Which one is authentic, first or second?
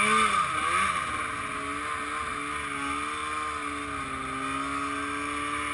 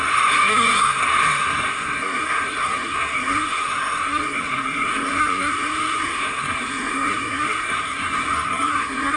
first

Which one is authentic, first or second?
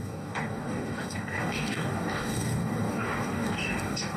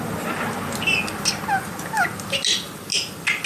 second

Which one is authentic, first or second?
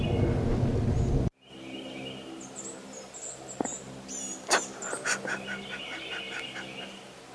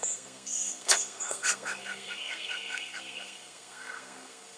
first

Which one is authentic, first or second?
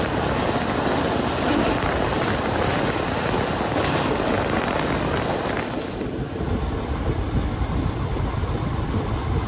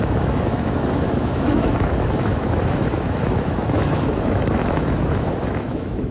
first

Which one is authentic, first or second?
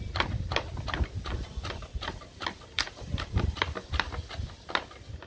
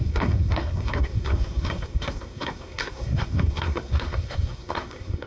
first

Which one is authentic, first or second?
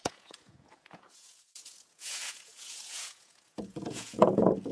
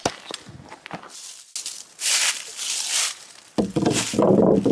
second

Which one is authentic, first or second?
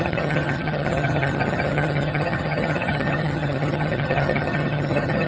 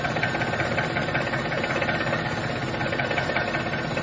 second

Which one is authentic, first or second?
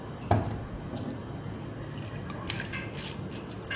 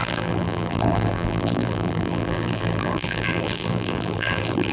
first